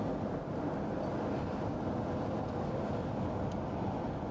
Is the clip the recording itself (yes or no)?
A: yes